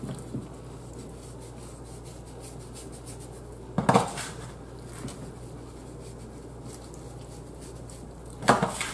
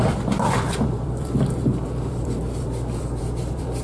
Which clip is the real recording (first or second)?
first